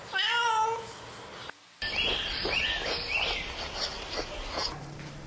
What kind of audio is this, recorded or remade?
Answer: recorded